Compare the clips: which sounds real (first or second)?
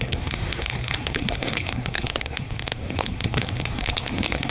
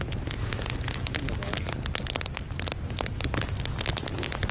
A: second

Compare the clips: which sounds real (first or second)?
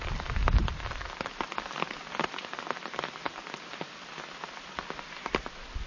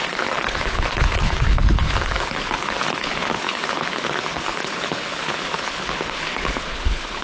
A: first